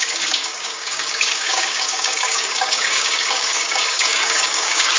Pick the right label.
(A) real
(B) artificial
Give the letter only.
B